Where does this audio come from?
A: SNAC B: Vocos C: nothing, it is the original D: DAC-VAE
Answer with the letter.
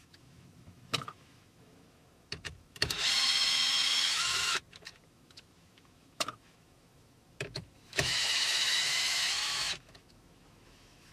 D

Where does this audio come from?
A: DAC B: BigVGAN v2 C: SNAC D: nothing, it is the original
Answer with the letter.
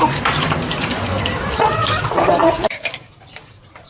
B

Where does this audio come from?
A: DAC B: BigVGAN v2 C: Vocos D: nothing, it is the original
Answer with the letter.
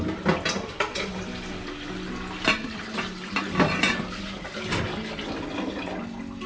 D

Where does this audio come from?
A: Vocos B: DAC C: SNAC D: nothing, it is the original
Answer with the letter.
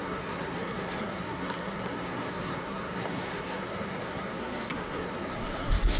C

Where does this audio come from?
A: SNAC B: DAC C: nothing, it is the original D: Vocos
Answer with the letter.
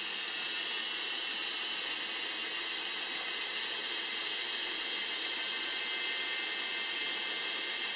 C